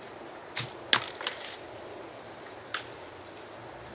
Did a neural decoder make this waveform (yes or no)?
no